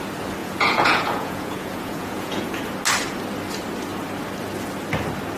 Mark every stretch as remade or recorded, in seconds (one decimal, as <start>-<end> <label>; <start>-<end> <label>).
0.0-0.4 recorded; 0.4-2.6 remade; 2.6-5.4 recorded